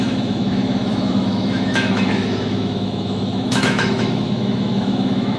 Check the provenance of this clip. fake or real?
fake